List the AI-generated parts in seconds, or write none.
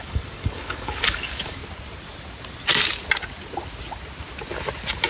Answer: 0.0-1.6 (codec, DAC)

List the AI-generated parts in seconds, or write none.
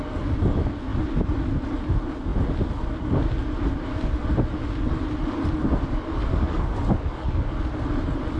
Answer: 6.2-7.6 (codec, DAC)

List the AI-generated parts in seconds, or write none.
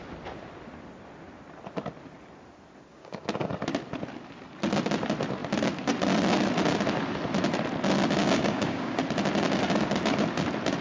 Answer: 2.9-3.5 (codec, DAC); 8.2-9.0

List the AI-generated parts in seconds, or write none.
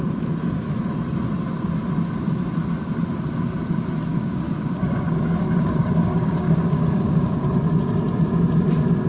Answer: 4.1-7.5 (codec, DAC)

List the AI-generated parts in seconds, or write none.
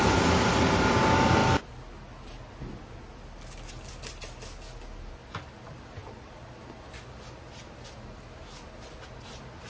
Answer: none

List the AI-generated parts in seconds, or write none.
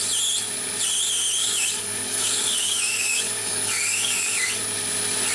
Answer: 1.4-4.6 (codec, DAC)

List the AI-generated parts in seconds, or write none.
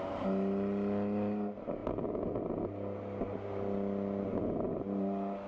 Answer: none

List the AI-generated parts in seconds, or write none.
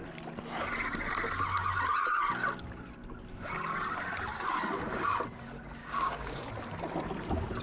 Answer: 5.8-6.5 (codec, DAC)